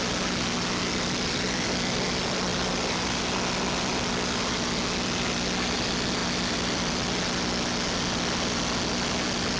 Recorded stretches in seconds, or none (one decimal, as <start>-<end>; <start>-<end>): 0.0-9.6